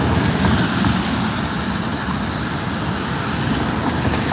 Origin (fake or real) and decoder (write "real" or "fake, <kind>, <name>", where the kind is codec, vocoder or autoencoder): real